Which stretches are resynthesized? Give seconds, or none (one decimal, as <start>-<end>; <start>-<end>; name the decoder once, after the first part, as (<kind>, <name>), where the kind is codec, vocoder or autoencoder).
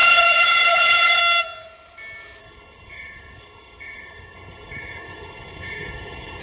0.0-1.2 (codec, HILCodec); 2.4-6.4